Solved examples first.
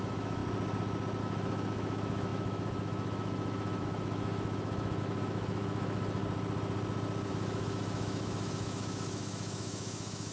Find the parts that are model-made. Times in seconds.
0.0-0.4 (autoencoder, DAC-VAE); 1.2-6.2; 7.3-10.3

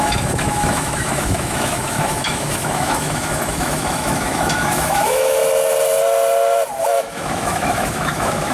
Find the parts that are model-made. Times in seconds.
0.0-5.4 (autoencoder, DAC-VAE); 6.8-8.5

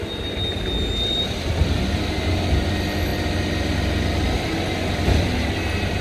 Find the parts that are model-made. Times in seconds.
none

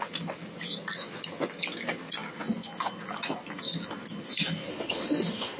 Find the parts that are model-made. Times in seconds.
4.7-5.6 (autoencoder, DAC-VAE)

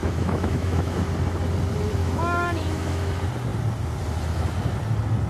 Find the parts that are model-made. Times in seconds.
0.0-1.0 (autoencoder, DAC-VAE); 2.0-3.1

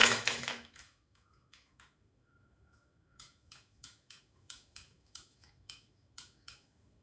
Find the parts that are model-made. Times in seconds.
0.0-7.0 (autoencoder, DAC-VAE)